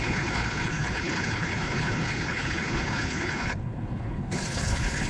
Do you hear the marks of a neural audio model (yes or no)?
yes